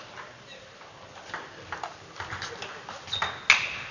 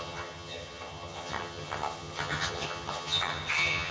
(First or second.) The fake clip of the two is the second